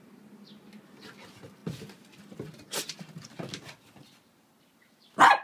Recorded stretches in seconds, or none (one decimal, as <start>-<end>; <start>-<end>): 0.0-5.4